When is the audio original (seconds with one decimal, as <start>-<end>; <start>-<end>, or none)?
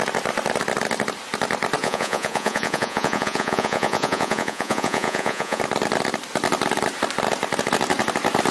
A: 0.0-1.8; 5.6-8.5